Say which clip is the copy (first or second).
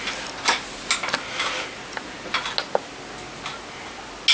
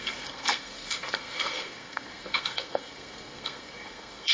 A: second